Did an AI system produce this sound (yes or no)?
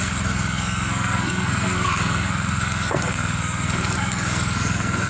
yes